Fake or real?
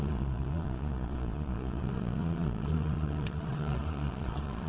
fake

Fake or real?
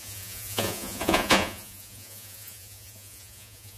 fake